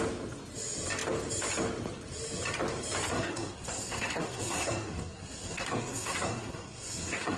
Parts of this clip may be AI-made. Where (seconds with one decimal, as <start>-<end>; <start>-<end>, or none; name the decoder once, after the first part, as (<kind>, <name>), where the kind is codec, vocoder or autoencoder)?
3.1-7.4 (codec, SNAC)